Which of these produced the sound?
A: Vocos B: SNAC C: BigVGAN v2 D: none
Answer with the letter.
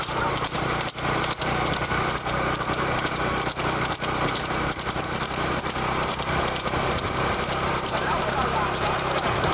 C